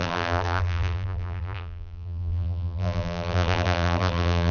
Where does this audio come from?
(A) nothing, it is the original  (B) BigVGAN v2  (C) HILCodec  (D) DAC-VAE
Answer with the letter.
B